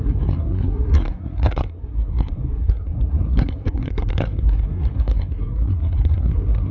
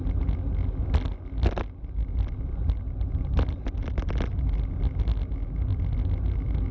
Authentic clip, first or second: second